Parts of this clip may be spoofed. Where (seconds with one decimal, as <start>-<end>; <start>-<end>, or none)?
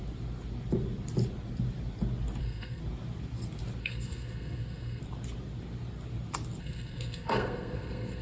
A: 2.4-2.8; 3.8-5.0; 6.6-8.2